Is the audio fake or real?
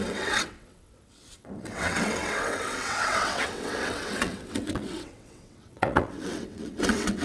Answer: fake